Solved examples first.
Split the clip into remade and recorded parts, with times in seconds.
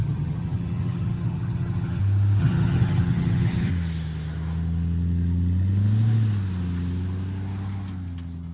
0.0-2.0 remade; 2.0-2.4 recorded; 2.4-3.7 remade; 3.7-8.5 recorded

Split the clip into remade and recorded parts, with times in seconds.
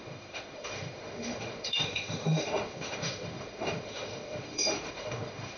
0.0-5.6 remade